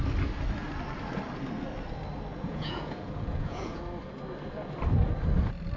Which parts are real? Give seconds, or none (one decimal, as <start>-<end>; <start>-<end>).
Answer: 0.0-2.3; 3.8-5.8